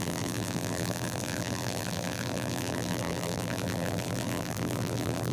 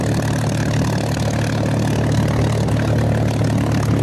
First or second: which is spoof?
first